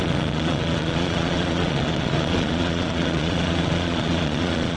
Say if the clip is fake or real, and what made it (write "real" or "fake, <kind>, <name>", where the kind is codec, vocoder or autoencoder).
fake, vocoder, Vocos